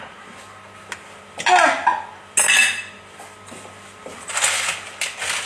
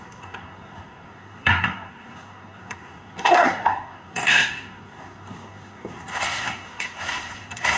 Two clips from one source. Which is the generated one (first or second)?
second